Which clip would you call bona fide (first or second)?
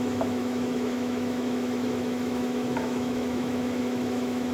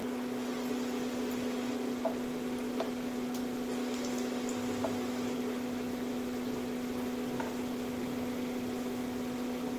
second